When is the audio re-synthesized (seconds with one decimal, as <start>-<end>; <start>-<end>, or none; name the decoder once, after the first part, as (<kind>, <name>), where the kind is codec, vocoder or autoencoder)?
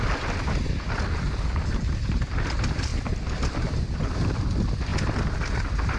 none